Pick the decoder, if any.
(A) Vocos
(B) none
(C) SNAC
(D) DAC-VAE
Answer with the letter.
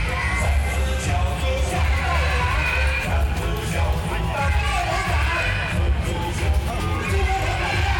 B